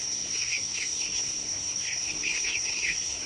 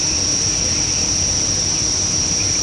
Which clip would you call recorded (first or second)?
second